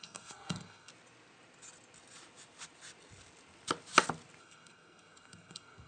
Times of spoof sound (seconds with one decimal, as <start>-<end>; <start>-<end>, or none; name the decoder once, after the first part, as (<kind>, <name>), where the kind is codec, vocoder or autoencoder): 0.0-0.9 (codec, SNAC); 4.4-5.9